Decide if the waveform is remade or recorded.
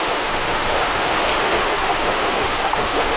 remade